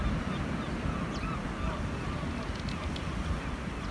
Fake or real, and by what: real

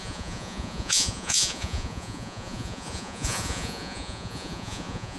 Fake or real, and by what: fake, vocoder, Vocos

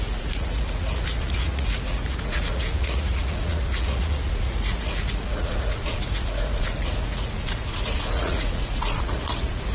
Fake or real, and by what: fake, vocoder, Vocos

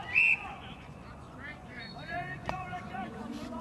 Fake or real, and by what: fake, vocoder, Vocos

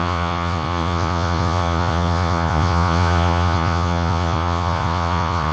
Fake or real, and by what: fake, vocoder, Vocos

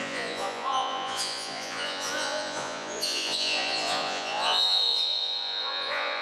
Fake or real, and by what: fake, vocoder, Vocos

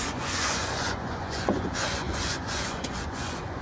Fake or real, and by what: fake, vocoder, Vocos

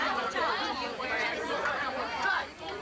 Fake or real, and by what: fake, vocoder, Vocos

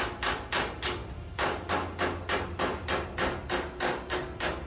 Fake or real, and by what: real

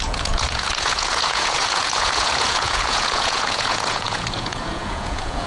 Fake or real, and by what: fake, vocoder, Vocos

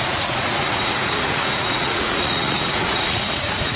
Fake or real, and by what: fake, vocoder, Vocos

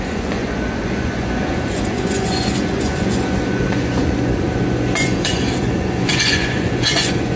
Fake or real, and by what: fake, vocoder, Vocos